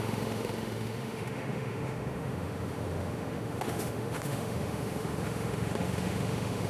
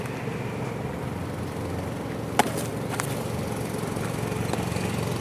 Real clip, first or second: second